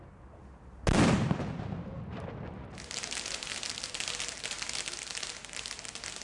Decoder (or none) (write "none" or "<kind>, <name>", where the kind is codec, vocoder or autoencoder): none